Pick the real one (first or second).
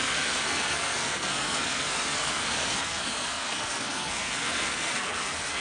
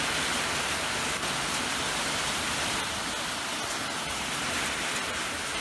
second